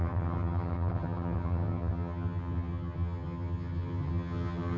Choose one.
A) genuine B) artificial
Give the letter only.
B